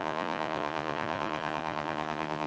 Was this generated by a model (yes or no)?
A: yes